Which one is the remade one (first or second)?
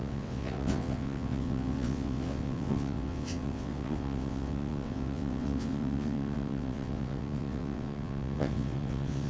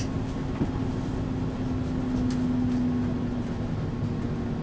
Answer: first